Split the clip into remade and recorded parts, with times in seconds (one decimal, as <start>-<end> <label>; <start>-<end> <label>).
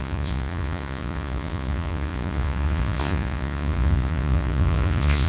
0.0-5.3 remade